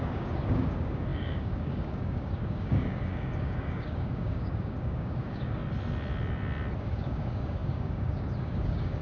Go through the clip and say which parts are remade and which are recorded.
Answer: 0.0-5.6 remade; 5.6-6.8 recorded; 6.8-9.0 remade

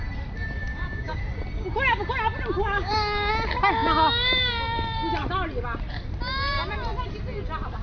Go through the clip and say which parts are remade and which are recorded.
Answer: 0.0-0.6 recorded; 0.6-1.2 remade; 1.2-2.6 recorded; 2.6-3.3 remade; 3.3-7.8 recorded

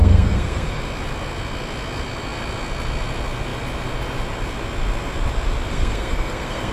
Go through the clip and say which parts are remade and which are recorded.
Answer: 0.0-0.8 remade; 0.8-5.7 recorded; 5.7-6.7 remade

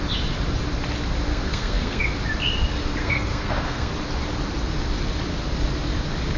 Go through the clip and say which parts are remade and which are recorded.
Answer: 0.0-1.3 recorded; 1.3-2.0 remade; 2.0-3.0 recorded; 3.0-3.9 remade; 3.9-6.4 recorded

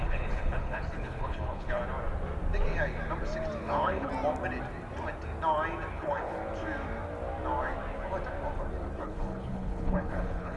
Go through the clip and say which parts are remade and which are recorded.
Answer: 0.0-1.8 remade; 1.8-3.6 recorded; 3.6-4.1 remade; 4.1-5.9 recorded; 5.9-6.4 remade; 6.4-9.0 recorded; 9.0-10.6 remade

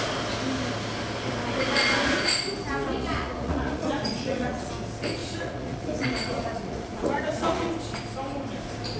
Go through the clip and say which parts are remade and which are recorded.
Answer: 0.0-2.9 recorded; 2.9-4.7 remade; 4.7-5.2 recorded; 5.2-7.7 remade; 7.7-9.0 recorded

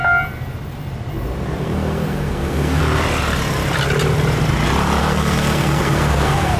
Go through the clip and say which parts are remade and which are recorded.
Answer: 0.0-1.6 recorded; 1.6-2.8 remade; 2.8-5.0 recorded; 5.0-6.6 remade